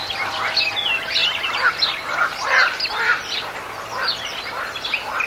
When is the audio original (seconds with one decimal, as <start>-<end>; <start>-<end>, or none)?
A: 0.0-5.3